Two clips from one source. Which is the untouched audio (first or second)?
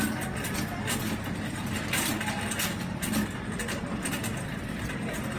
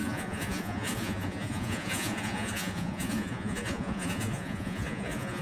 first